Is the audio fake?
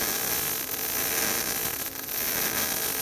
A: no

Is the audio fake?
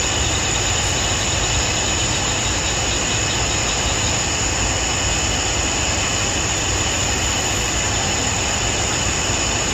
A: no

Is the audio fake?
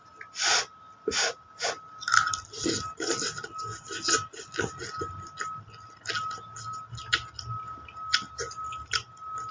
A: no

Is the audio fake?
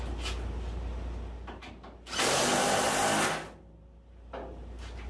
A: no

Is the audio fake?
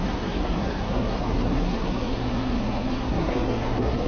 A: yes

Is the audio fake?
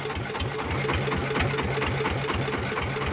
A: no